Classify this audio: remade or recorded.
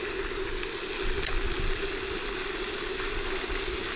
recorded